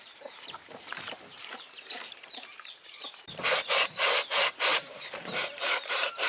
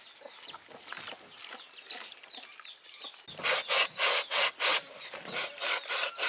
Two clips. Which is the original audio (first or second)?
second